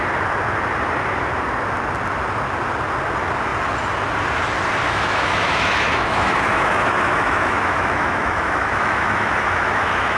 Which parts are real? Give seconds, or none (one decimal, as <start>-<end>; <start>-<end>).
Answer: 0.0-4.8